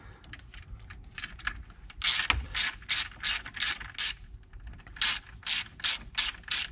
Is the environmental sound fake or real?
real